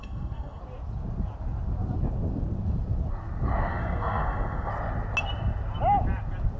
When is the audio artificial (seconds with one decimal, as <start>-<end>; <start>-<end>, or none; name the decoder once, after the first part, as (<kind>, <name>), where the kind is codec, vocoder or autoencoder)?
0.0-0.6 (codec, SNAC); 3.7-4.7